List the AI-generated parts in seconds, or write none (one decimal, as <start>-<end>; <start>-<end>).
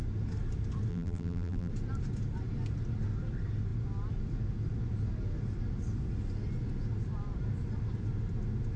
0.9-1.7